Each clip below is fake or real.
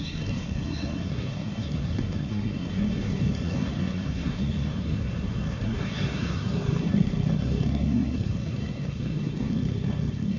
fake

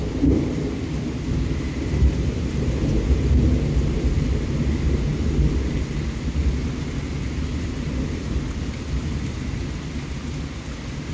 real